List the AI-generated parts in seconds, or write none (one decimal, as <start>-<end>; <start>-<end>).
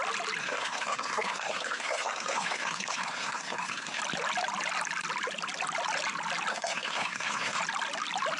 0.4-4.0; 6.5-7.6